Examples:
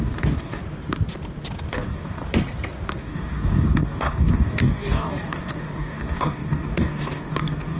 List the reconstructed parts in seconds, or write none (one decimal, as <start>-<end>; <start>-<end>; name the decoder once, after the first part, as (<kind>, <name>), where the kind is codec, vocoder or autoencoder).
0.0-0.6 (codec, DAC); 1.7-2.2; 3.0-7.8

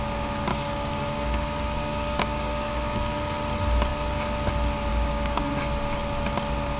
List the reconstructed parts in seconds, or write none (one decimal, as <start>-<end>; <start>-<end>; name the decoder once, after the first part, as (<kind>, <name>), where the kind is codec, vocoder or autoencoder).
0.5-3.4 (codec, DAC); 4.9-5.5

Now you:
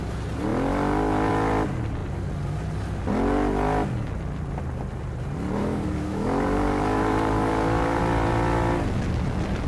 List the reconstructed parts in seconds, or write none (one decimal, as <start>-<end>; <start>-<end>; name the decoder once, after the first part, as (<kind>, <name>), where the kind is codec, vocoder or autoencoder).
5.6-8.0 (codec, DAC)